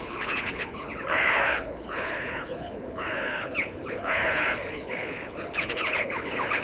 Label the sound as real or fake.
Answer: fake